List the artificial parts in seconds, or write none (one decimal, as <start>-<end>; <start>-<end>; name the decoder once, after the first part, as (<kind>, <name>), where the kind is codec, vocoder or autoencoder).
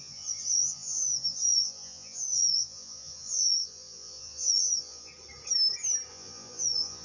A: 0.0-5.1 (vocoder, Vocos); 6.1-7.0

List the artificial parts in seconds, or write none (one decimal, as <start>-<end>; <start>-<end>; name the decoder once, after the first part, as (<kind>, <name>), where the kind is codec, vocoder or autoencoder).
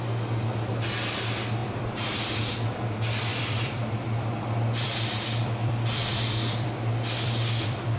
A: 1.6-2.4 (vocoder, BigVGAN v2); 3.3-8.0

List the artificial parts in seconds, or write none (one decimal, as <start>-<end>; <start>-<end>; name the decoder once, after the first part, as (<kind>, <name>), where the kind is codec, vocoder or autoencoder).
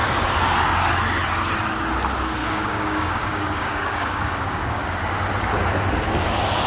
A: 2.4-4.8 (codec, DAC)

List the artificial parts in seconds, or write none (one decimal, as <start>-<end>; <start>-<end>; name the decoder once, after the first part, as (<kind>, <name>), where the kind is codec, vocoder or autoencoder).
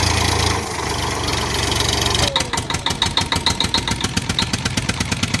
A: none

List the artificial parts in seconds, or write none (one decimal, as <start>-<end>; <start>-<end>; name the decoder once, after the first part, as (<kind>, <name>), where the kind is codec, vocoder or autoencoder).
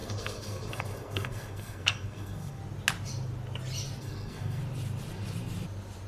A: 0.0-2.6 (codec, SNAC); 4.0-4.6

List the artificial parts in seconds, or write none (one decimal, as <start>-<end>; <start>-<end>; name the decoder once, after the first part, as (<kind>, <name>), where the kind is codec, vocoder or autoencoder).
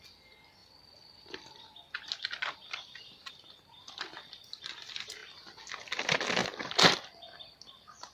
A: none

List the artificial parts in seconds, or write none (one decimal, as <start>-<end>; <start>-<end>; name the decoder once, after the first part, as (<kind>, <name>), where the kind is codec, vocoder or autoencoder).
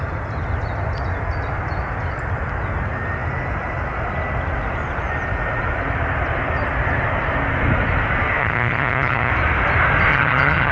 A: 8.4-9.3 (vocoder, HiFi-GAN); 10.1-10.7